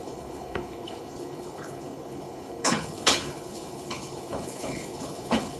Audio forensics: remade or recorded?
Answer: remade